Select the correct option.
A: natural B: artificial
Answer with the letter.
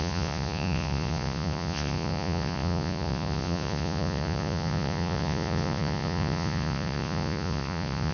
B